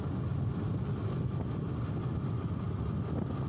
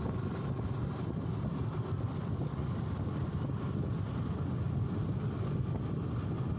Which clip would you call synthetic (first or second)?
second